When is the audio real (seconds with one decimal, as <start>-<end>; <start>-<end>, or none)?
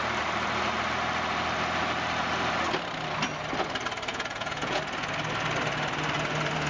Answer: 0.0-4.1; 4.8-6.7